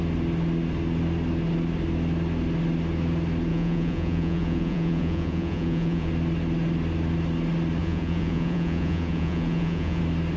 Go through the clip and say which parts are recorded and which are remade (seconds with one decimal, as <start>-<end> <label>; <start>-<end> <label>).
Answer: 0.0-3.5 recorded; 3.5-6.1 remade; 6.1-7.8 recorded; 7.8-10.0 remade; 10.0-10.4 recorded